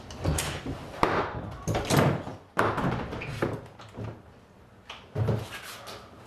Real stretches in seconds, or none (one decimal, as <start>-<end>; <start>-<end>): 0.0-6.3

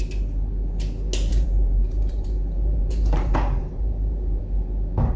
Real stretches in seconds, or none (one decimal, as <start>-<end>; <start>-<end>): 0.0-1.3; 4.4-5.2

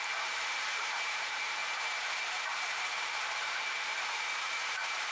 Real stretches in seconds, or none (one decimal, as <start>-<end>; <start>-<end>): none

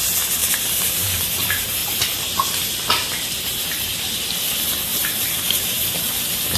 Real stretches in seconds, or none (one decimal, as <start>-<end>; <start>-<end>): 0.0-0.4; 1.2-4.9; 6.0-6.6

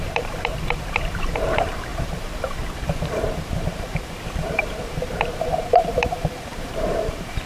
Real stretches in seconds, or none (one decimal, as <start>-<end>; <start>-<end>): none

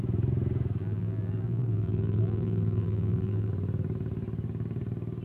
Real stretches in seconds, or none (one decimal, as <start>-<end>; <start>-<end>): 0.0-0.8; 3.5-5.2

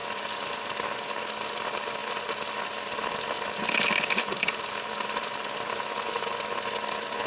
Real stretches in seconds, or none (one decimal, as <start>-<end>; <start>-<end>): 0.6-2.0; 6.4-7.3

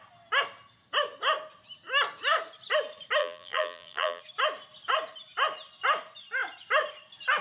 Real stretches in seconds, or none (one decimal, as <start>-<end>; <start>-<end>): 0.0-3.2; 4.2-7.4